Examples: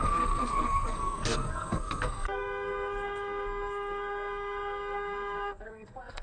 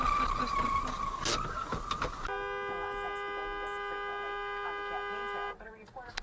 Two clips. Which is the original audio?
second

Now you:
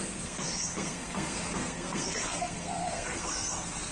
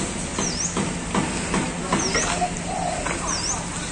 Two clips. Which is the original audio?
second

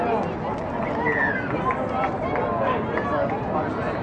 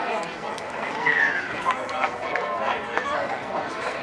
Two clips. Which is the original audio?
first